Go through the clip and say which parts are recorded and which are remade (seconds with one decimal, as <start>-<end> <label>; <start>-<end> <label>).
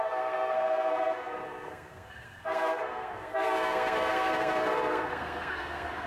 0.0-6.1 remade